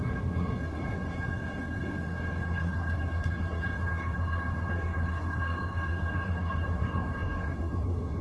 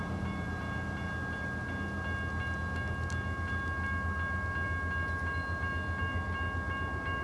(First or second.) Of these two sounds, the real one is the second